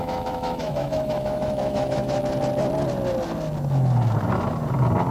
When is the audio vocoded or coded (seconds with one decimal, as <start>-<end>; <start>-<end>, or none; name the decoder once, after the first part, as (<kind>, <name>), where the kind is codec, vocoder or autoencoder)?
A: 0.0-2.2 (autoencoder, DAC-VAE)